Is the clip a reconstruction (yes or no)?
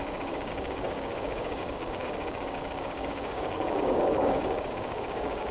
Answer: yes